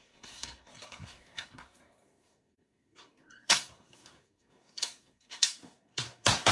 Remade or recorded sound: remade